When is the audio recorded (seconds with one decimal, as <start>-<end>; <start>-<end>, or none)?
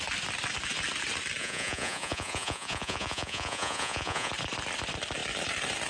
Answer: 0.0-1.4; 4.3-5.9